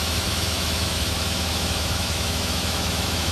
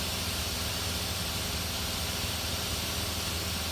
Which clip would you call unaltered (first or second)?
second